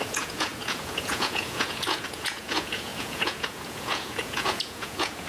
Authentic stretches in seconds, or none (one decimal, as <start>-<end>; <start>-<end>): none